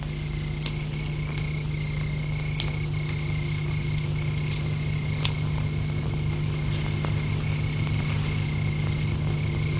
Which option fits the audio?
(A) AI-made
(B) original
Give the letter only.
B